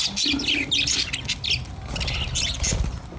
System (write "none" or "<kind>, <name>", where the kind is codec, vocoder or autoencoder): none